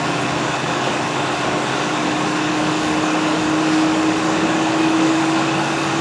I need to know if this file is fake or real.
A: fake